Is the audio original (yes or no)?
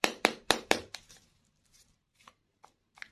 no